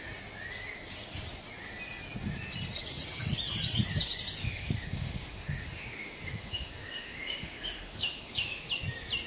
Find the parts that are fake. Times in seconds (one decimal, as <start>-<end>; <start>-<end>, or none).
4.4-8.7